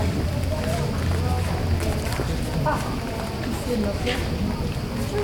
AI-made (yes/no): no